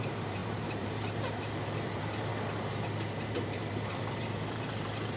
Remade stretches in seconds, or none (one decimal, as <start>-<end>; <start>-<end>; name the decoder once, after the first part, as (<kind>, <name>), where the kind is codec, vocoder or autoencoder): 0.0-2.3 (vocoder, BigVGAN v2); 3.1-5.2